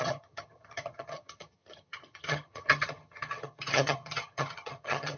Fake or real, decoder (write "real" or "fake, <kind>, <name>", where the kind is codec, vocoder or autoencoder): fake, vocoder, HiFi-GAN